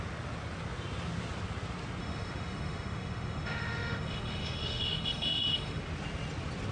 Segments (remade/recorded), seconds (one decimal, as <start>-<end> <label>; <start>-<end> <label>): 0.0-2.0 recorded; 2.0-5.8 remade; 5.8-6.7 recorded